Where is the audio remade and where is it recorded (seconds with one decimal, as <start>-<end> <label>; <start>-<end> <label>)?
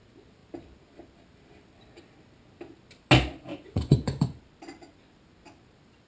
0.0-3.5 recorded; 3.5-4.4 remade; 4.4-6.1 recorded